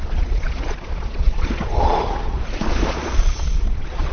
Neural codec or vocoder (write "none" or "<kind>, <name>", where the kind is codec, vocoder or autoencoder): vocoder, Vocos